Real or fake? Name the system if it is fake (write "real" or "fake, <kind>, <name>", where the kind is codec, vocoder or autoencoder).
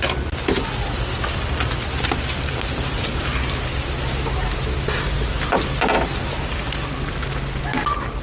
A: real